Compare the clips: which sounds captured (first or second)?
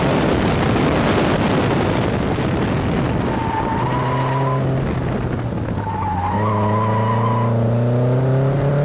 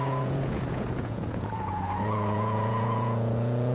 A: first